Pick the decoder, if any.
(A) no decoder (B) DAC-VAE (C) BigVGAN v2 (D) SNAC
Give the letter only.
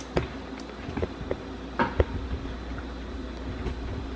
A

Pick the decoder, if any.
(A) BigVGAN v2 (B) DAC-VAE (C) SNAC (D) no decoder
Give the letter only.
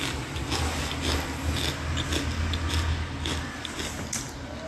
D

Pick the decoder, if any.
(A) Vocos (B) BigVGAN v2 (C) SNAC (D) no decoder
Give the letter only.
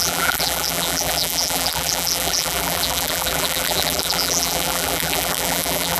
B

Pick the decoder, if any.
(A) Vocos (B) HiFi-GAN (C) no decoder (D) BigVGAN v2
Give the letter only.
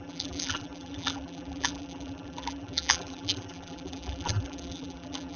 D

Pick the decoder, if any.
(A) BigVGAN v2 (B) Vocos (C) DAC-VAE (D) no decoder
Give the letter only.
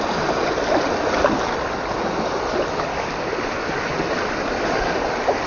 D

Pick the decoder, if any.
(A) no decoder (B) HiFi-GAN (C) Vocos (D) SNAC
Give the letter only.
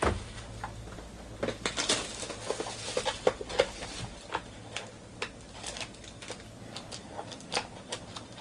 A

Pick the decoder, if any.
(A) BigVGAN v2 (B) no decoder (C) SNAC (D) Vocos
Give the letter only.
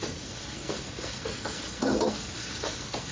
C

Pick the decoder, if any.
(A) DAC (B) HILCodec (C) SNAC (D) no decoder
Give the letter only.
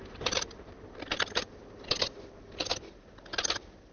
D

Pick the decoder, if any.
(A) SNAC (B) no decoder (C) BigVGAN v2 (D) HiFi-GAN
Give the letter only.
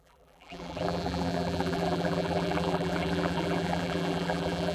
C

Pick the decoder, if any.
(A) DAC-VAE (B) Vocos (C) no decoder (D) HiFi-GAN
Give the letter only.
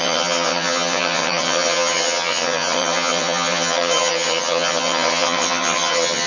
D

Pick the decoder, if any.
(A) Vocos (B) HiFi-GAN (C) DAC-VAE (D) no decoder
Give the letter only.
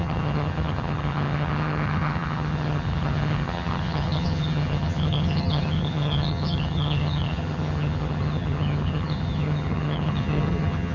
B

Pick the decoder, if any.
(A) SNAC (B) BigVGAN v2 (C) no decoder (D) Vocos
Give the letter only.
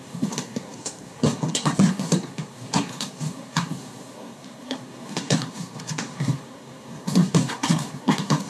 A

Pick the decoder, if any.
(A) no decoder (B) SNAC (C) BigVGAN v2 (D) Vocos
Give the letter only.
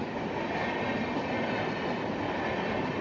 A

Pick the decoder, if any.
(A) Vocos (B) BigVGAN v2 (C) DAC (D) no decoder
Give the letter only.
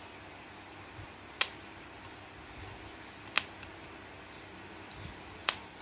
D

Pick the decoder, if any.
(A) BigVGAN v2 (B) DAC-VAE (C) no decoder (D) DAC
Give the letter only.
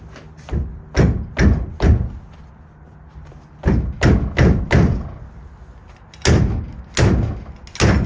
C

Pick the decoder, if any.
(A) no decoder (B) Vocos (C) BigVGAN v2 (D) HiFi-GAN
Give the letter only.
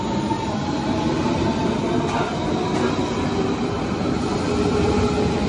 A